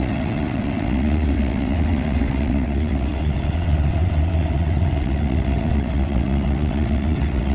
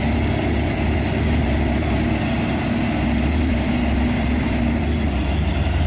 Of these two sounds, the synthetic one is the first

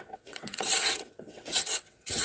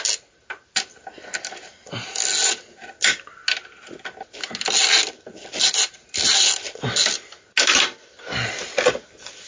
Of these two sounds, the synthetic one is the first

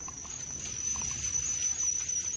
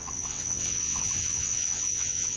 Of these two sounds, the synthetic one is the second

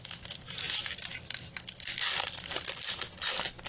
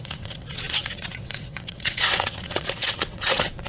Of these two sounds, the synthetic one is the second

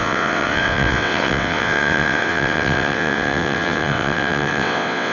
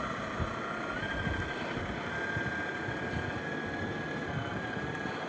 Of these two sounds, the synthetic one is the first